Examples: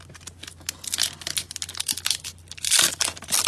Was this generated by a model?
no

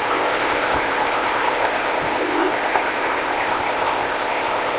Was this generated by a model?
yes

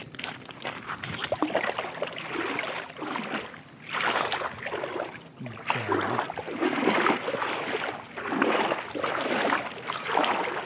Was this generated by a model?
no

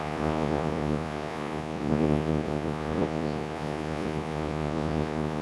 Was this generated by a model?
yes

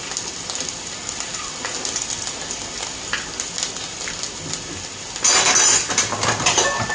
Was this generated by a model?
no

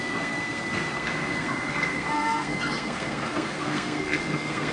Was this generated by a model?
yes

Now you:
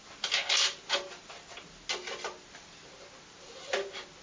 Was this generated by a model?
no